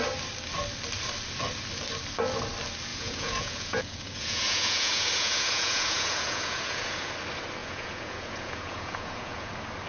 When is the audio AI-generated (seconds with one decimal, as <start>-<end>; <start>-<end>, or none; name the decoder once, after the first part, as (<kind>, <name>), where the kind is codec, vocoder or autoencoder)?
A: 2.9-7.1 (vocoder, Vocos); 7.6-9.5